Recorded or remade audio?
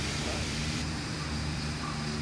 remade